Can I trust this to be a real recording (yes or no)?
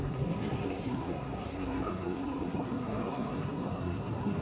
no